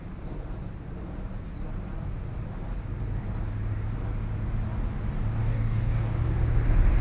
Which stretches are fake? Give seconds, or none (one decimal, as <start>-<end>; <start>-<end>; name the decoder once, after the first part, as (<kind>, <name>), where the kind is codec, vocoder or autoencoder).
5.4-6.0 (codec, DAC)